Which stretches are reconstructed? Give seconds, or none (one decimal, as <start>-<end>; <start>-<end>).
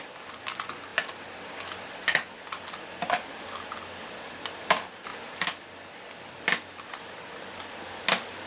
none